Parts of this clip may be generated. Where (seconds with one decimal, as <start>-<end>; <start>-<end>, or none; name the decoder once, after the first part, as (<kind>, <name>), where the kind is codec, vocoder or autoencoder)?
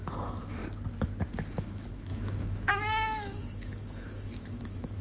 0.0-0.6 (autoencoder, DAC-VAE); 1.6-5.0